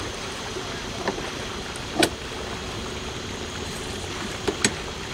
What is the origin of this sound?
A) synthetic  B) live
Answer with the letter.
B